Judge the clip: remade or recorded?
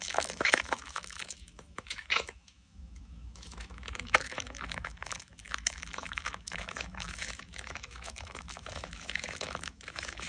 remade